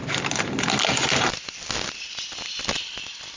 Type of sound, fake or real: real